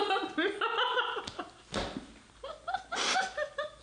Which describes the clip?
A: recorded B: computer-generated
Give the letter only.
A